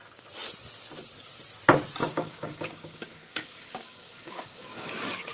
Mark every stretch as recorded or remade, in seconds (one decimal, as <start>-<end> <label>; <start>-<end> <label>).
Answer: 0.0-2.0 recorded; 2.0-5.3 remade